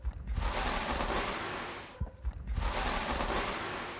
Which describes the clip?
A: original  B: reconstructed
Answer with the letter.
A